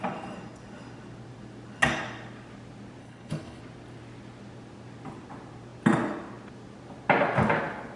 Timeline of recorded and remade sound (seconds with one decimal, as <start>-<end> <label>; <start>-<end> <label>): 0.0-3.0 recorded; 3.0-3.6 remade; 3.6-8.0 recorded